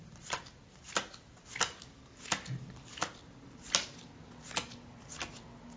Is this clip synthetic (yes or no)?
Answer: no